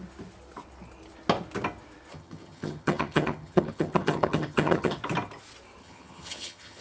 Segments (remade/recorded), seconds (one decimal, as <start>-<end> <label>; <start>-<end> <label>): 0.0-2.1 recorded; 2.1-5.0 remade; 5.0-5.8 recorded; 5.8-6.8 remade